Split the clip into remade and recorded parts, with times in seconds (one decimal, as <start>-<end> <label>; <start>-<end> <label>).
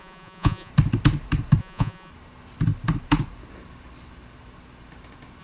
0.0-0.7 remade; 0.7-1.6 recorded; 1.6-2.1 remade; 2.1-5.4 recorded